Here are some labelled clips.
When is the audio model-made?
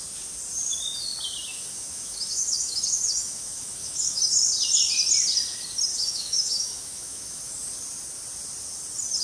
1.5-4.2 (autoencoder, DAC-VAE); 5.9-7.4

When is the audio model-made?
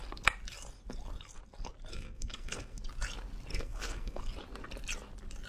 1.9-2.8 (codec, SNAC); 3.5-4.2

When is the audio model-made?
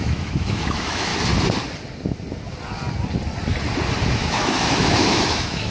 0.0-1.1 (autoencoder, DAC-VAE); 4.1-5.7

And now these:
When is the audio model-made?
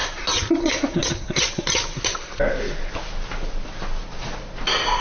none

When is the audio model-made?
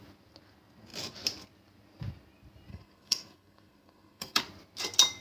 2.7-4.4 (codec, SNAC)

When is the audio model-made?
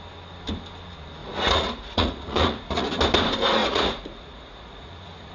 1.2-3.0 (vocoder, Vocos); 3.6-5.3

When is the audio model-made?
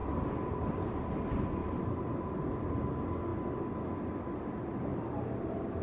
0.0-1.1 (vocoder, BigVGAN v2); 1.6-2.8; 4.9-5.8